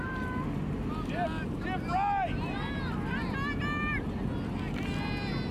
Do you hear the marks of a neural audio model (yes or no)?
no